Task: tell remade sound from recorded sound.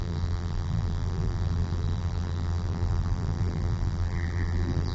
remade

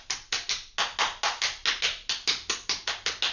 recorded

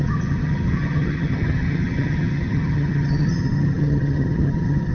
remade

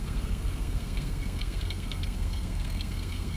remade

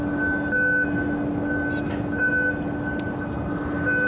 recorded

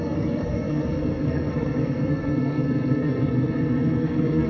remade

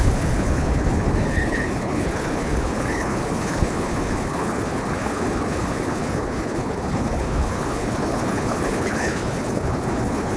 remade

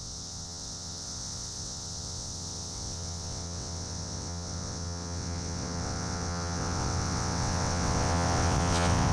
remade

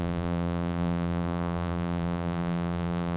remade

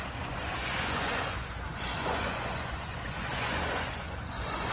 remade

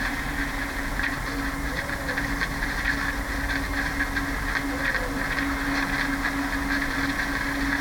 recorded